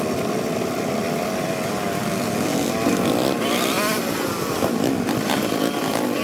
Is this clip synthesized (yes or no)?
no